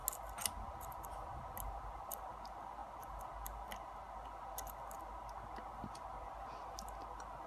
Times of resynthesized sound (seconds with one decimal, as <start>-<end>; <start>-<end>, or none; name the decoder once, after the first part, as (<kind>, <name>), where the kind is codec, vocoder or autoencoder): none